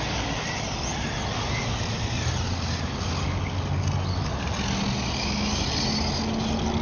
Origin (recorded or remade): recorded